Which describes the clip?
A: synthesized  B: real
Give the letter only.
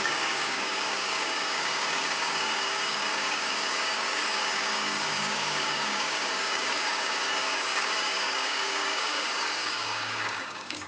A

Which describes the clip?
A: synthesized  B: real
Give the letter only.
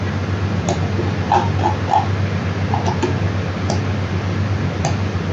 B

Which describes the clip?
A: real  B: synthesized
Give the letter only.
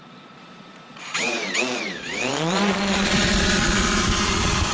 B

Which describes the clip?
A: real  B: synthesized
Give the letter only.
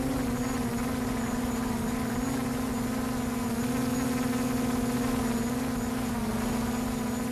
A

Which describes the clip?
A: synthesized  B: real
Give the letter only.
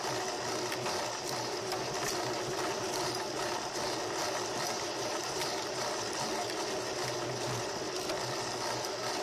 B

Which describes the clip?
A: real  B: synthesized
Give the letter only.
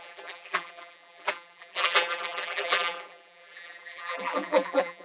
B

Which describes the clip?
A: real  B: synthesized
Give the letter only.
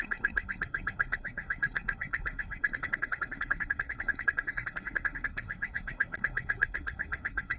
B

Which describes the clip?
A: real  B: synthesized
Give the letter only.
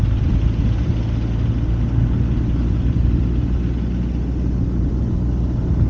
A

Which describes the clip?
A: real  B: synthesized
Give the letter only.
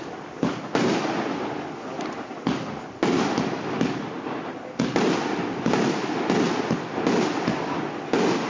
A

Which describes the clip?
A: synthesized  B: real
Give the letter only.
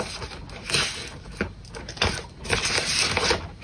B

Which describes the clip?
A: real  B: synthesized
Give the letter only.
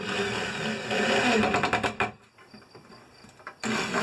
A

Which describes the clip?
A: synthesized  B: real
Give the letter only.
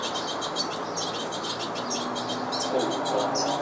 B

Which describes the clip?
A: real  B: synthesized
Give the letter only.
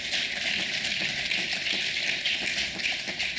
A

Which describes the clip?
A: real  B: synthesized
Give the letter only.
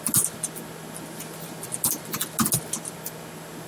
A